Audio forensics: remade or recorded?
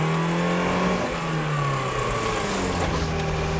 recorded